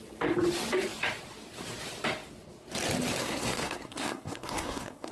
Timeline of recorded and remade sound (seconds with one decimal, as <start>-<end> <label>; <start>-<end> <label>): 0.0-3.2 recorded; 3.2-5.1 remade